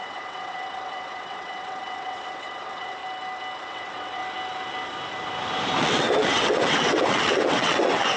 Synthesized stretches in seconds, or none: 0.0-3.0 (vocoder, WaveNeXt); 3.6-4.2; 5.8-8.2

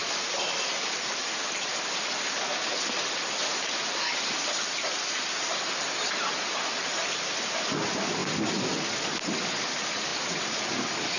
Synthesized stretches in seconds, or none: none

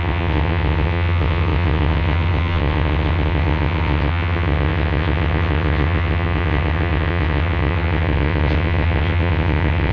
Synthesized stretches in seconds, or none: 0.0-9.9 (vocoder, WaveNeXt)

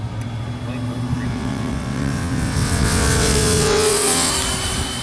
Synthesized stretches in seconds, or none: 1.3-4.3 (vocoder, WaveNeXt)

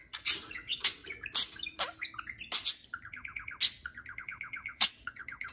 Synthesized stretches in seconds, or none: 0.5-1.0 (vocoder, WaveNeXt); 4.2-5.5

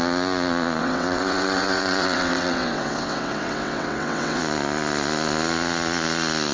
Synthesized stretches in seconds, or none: 0.8-4.4 (vocoder, WaveNeXt)